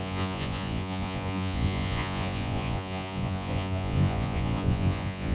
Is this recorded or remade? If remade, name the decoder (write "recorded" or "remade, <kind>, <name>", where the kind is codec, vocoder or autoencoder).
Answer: remade, vocoder, Vocos